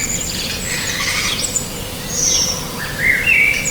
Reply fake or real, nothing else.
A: real